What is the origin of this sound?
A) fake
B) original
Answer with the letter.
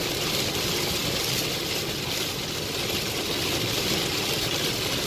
B